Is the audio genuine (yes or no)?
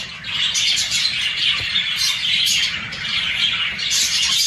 yes